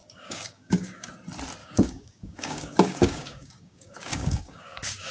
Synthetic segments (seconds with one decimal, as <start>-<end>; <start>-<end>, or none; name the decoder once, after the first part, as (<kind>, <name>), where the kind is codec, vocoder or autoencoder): 0.0-1.1 (codec, DAC); 1.6-5.1